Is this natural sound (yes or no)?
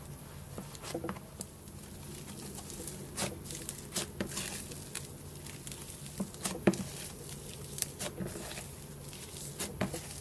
yes